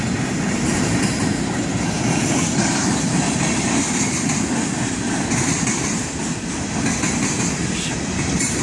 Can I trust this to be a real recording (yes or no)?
no